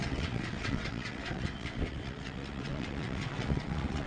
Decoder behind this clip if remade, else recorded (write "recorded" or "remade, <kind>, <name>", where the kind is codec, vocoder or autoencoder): remade, vocoder, WaveNeXt